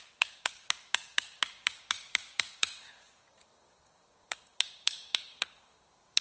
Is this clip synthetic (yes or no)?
yes